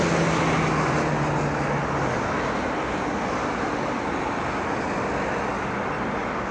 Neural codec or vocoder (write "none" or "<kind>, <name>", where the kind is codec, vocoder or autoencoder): none